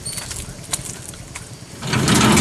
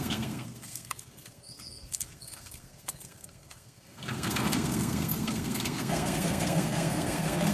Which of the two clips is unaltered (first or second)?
first